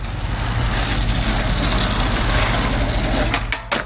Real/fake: real